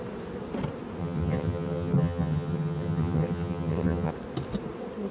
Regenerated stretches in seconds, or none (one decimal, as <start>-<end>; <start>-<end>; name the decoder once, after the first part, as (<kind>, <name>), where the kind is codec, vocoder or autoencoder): 1.0-4.1 (vocoder, HiFi-GAN)